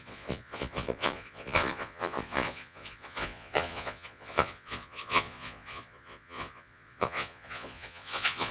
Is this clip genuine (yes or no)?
no